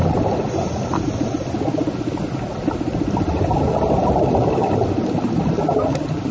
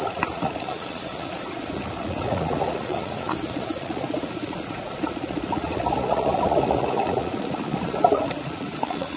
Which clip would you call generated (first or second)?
second